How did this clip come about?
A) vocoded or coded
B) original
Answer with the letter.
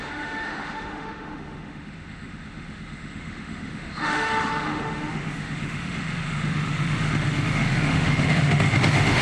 A